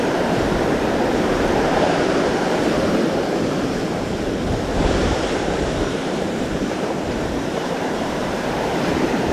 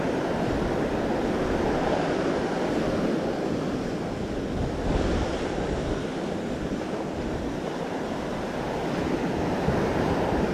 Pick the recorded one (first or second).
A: second